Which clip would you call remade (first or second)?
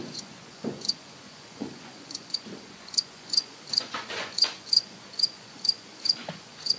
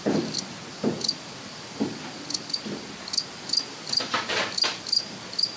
first